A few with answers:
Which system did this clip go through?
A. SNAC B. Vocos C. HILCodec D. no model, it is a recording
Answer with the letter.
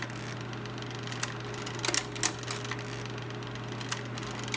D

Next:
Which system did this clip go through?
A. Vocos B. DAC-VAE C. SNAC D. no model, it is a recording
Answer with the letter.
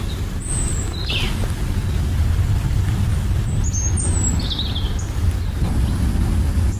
D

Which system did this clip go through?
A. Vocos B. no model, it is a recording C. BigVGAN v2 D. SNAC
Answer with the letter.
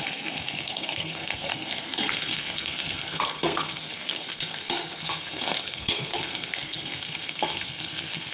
D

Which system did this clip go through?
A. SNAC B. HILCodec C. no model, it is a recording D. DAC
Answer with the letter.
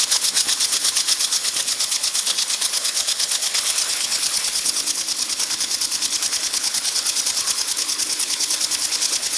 B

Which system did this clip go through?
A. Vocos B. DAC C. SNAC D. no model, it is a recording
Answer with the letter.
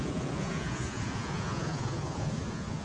A